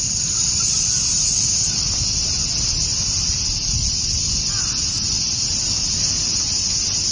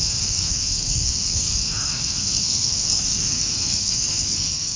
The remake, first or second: second